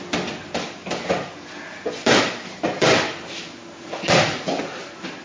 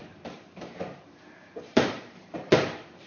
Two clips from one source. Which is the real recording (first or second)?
first